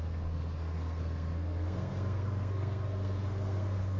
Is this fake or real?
fake